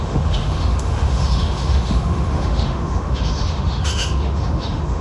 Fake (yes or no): yes